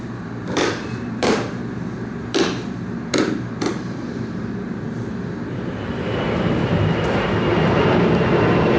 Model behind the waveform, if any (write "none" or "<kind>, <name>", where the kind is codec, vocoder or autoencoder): vocoder, BigVGAN v2